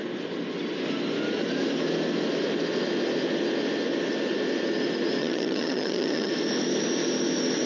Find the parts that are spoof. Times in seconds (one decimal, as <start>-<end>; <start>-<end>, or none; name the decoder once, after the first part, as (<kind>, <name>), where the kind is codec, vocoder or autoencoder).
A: 5.2-6.3 (vocoder, HiFi-GAN)